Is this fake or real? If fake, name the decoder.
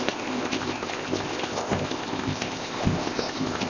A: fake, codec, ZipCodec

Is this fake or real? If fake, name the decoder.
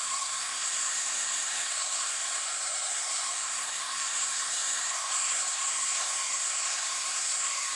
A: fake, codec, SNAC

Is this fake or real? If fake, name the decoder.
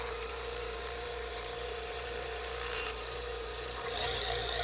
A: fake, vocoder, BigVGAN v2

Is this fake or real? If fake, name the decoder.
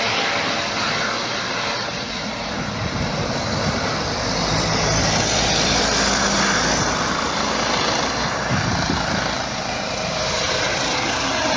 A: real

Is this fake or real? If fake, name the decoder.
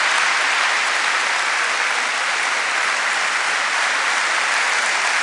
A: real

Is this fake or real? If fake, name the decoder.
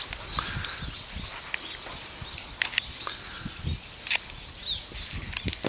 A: real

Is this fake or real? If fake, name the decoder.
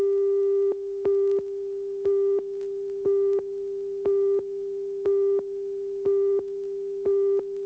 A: real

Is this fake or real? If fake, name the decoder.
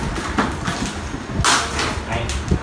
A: real